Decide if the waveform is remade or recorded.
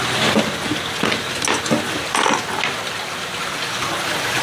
recorded